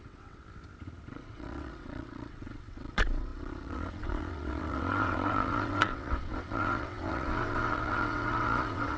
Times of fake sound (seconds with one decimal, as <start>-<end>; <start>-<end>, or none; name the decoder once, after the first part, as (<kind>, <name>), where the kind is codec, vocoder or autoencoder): 0.0-0.4 (vocoder, WaveNeXt); 1.1-9.0

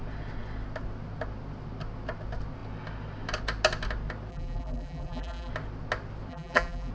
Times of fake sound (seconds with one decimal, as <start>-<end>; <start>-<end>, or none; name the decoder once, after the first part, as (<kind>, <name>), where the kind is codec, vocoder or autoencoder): 4.3-5.5 (vocoder, BigVGAN v2); 6.3-6.9